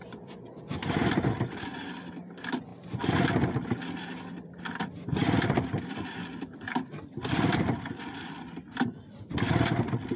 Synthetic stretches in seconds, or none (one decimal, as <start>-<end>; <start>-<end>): 0.0-1.7; 2.2-2.7; 4.3-10.2